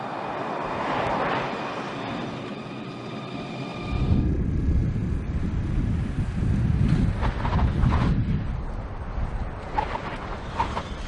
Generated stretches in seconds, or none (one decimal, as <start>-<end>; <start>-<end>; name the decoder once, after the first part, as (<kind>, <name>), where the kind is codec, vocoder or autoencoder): 2.5-3.1 (vocoder, Vocos); 7.5-8.1

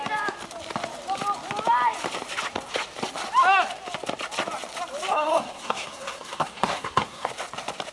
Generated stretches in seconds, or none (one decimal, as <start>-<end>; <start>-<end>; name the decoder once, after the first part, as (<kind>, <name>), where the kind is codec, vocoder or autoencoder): 5.1-7.3 (codec, SNAC)

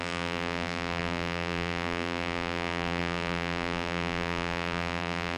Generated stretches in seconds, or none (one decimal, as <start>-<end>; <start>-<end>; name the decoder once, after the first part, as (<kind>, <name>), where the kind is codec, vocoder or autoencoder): 0.0-5.4 (vocoder, BigVGAN v2)

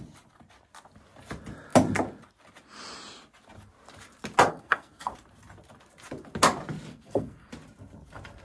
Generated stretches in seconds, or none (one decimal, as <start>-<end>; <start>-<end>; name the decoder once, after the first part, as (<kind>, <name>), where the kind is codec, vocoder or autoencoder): 4.5-5.1 (codec, SNAC); 6.9-7.5

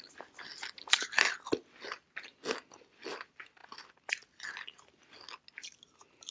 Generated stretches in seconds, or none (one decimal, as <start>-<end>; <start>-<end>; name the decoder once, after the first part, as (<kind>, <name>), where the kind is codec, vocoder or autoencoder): none

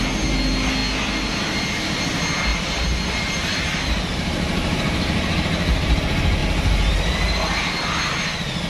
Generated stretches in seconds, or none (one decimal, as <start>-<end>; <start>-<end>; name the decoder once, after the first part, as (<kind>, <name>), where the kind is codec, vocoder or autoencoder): 2.5-6.0 (vocoder, BigVGAN v2)

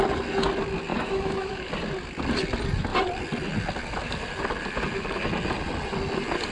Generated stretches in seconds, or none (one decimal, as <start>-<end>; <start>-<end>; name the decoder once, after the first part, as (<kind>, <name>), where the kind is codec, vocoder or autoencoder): 0.9-1.7 (autoencoder, DAC-VAE)

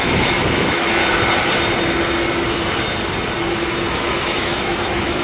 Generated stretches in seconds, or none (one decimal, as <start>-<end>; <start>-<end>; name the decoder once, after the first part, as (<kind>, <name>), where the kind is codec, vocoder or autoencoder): 0.0-1.0 (autoencoder, DAC-VAE); 3.9-5.2